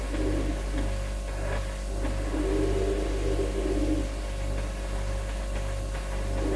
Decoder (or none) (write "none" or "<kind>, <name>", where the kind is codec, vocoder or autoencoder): none